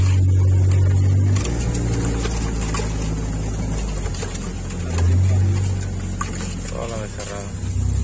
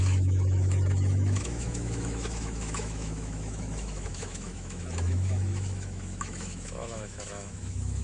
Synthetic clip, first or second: second